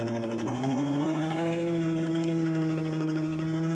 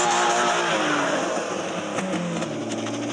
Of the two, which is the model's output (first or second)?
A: first